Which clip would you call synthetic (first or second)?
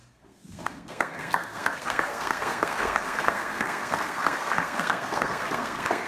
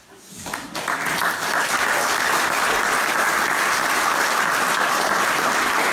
first